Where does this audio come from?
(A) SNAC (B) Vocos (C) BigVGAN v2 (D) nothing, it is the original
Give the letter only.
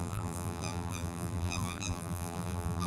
C